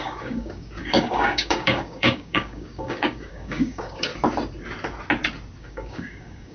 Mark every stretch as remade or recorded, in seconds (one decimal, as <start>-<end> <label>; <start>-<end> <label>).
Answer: 0.0-4.1 remade; 4.1-5.6 recorded; 5.6-6.5 remade